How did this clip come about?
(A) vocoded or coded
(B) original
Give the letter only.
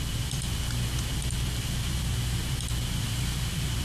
A